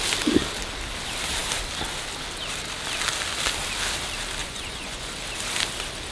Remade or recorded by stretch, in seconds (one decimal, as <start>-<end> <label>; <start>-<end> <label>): 0.0-4.4 recorded; 4.4-5.1 remade; 5.1-6.1 recorded